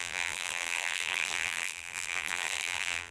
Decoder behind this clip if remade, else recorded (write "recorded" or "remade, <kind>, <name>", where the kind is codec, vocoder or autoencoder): remade, vocoder, BigVGAN v2